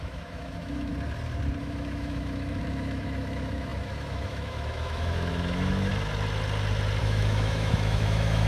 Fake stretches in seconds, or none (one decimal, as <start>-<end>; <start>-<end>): 0.0-0.9; 1.6-5.9; 7.0-8.5